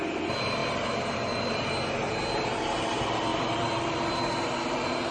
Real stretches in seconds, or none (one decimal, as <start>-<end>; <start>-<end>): 0.0-0.6; 1.7-3.3; 4.2-5.1